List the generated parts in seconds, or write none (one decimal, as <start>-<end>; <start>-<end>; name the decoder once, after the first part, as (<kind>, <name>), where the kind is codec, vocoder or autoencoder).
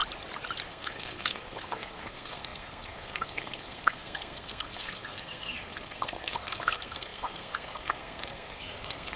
0.7-9.2 (codec, SNAC)